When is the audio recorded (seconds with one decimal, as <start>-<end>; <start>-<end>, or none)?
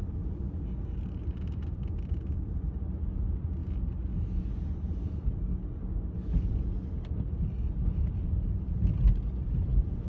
0.0-10.1